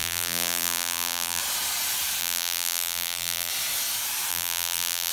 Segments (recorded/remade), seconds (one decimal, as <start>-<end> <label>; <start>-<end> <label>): 0.0-1.4 remade; 1.4-2.2 recorded; 2.2-3.5 remade; 3.5-4.3 recorded; 4.3-5.1 remade